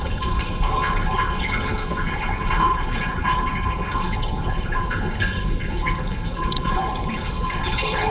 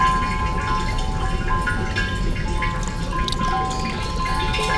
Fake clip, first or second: first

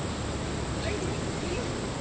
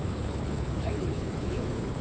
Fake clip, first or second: second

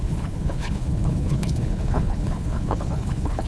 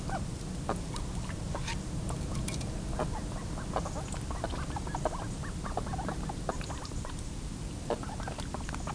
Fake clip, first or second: first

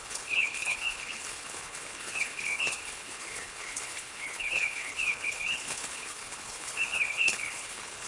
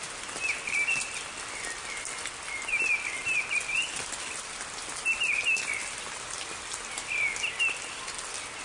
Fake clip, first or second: first